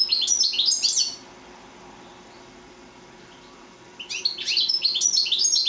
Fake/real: real